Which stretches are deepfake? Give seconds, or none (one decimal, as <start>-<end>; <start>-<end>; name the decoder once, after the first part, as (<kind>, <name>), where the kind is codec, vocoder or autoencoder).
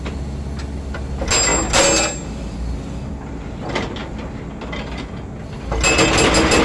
none